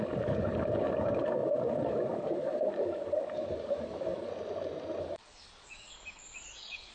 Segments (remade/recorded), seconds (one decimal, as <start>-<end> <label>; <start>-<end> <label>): 0.0-4.3 remade; 4.3-5.0 recorded; 5.0-6.9 remade